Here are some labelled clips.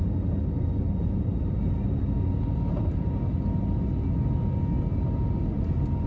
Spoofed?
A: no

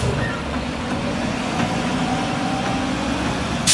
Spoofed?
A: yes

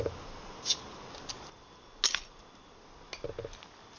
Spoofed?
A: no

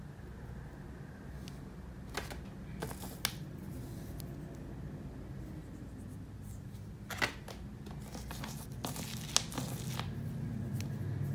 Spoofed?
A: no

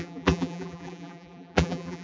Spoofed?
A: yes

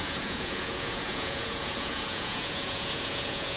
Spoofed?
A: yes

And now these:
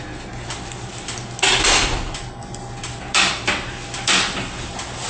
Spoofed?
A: no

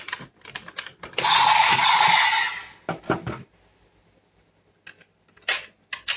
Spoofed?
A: no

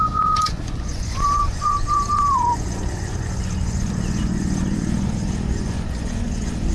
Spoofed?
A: yes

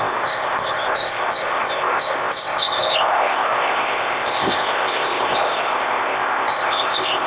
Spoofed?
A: yes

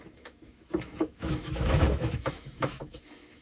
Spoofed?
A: yes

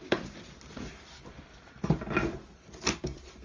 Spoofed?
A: no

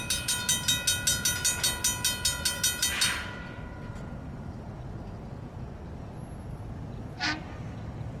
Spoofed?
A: no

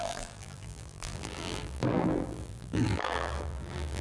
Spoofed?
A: yes